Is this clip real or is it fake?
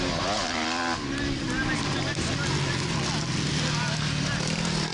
real